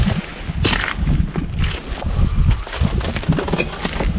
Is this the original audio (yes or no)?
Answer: yes